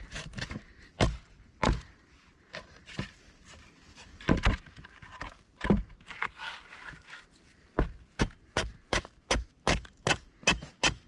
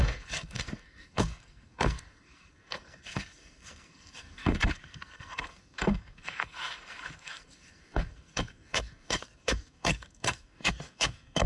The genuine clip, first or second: first